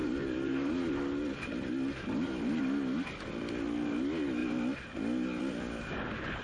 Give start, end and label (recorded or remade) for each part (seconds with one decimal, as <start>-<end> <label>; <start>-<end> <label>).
0.0-6.4 recorded